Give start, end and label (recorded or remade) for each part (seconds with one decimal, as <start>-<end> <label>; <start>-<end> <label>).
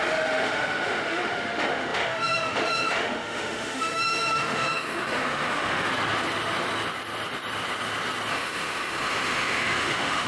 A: 0.0-5.9 remade; 5.9-8.3 recorded; 8.3-10.3 remade